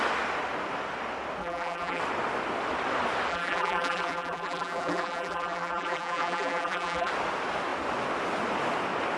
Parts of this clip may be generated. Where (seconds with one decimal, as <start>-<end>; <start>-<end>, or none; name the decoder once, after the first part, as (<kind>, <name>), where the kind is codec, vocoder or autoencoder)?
1.4-2.0 (vocoder, BigVGAN v2); 3.3-7.1